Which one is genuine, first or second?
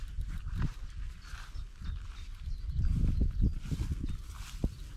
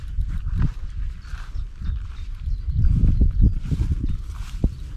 first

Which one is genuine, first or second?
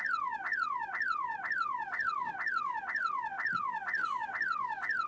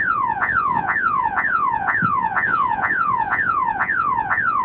first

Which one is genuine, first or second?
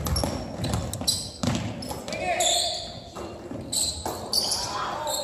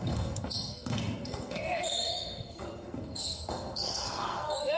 first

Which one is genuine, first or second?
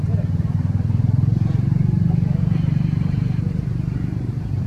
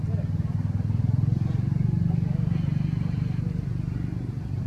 second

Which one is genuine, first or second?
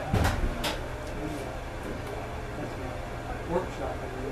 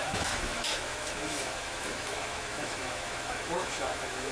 first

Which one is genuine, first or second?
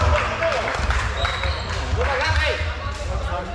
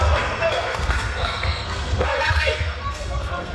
first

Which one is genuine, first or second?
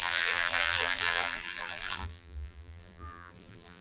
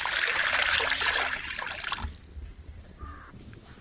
second